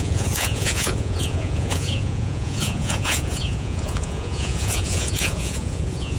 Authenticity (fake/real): fake